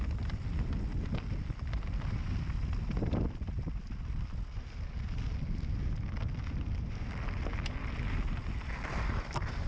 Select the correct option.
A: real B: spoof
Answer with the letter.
A